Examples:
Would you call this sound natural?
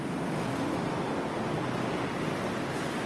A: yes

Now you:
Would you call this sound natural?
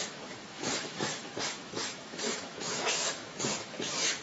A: no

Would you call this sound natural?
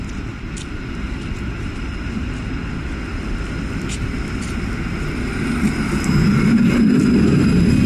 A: yes